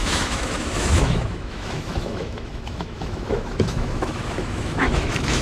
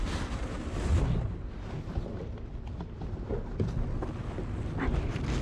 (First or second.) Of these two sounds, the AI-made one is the first